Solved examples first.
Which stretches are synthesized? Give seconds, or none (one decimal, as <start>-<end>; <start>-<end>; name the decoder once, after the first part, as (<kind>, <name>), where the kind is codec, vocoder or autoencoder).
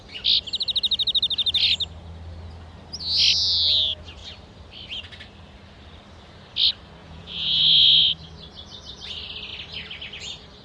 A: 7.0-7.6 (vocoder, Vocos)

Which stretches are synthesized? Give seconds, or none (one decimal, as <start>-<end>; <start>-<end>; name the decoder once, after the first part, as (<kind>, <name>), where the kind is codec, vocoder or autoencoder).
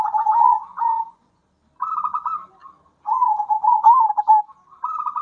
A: 0.7-1.4 (vocoder, Vocos)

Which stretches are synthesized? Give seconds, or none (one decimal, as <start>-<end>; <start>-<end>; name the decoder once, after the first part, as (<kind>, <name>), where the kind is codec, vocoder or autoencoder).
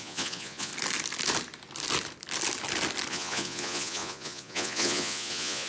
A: 0.0-0.7 (vocoder, Vocos); 3.1-5.7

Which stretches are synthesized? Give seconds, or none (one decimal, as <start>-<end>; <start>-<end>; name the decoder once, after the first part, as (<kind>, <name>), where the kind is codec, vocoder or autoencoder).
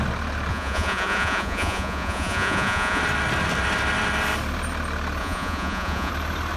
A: 0.5-3.0 (vocoder, Vocos); 5.2-6.1